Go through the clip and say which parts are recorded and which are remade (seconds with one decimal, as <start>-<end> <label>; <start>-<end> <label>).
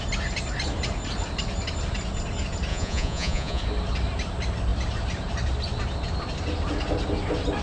0.0-2.7 recorded; 2.7-3.6 remade; 3.6-7.6 recorded